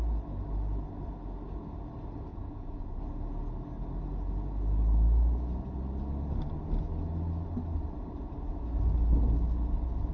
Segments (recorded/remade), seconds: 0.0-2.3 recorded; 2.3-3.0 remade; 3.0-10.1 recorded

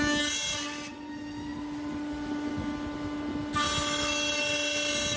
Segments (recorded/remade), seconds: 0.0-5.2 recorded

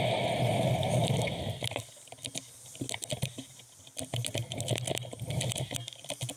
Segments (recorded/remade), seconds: 0.0-6.4 recorded

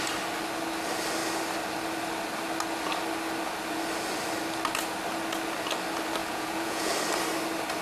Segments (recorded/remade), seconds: 0.0-6.2 recorded; 6.2-6.9 remade; 6.9-7.8 recorded